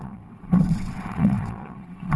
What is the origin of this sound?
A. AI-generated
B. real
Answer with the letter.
A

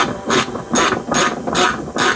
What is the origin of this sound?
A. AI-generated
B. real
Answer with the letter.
B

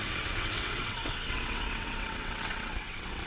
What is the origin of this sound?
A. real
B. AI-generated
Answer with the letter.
B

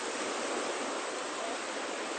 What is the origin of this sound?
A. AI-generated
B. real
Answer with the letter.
B